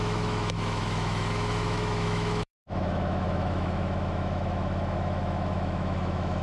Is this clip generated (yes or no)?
yes